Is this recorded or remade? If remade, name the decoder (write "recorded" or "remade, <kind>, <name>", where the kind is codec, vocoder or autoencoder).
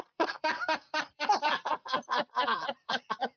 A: remade, vocoder, BigVGAN v2